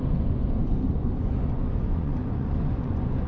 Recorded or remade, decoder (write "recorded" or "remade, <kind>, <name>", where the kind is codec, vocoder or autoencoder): remade, vocoder, Vocos